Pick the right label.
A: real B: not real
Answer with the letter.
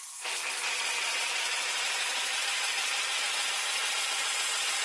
B